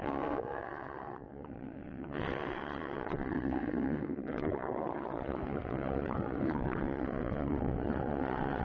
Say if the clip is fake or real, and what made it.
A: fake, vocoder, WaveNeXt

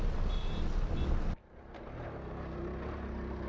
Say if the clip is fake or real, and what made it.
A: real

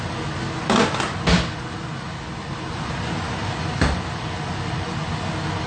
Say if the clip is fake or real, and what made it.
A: real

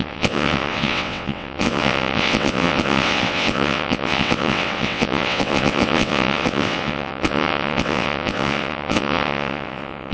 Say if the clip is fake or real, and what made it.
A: fake, vocoder, WaveNeXt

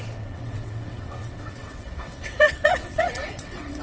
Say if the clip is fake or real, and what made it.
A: fake, vocoder, WaveNeXt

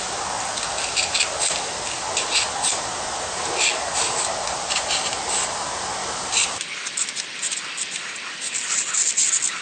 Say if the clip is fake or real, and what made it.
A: real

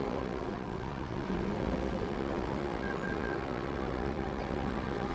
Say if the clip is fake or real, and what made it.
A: fake, vocoder, WaveNeXt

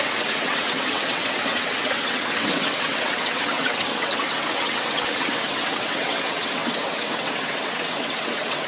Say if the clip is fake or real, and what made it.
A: fake, vocoder, WaveNeXt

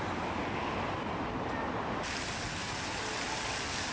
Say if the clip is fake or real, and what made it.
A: real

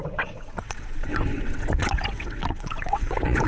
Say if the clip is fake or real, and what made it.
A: fake, vocoder, WaveNeXt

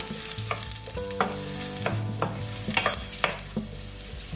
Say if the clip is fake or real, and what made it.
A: real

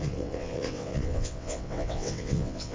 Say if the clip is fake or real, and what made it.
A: fake, vocoder, WaveNeXt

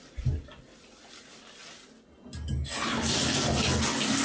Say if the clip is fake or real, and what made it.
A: real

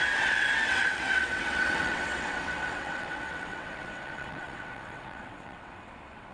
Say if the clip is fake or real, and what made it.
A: fake, vocoder, WaveNeXt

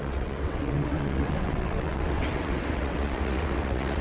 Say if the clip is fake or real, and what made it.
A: fake, vocoder, WaveNeXt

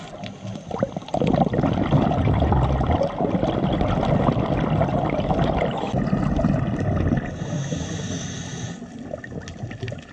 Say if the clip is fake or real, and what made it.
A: real